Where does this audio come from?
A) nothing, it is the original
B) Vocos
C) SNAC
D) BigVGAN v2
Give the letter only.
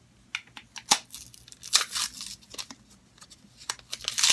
A